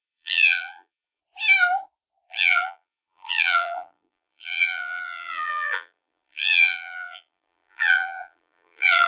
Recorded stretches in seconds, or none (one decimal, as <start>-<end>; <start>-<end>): 1.2-2.3